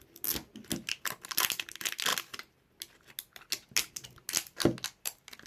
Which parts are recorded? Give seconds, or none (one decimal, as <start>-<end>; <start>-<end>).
0.0-5.5